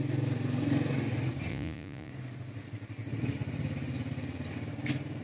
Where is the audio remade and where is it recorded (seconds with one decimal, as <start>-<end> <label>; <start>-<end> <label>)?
0.0-1.5 recorded; 1.5-2.1 remade; 2.1-5.2 recorded